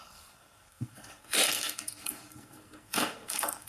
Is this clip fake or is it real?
fake